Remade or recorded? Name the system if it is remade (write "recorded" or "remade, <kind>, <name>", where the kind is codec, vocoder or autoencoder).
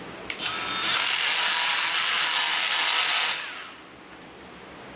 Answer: recorded